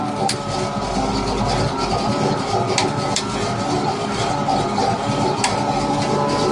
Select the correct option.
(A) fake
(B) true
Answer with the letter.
B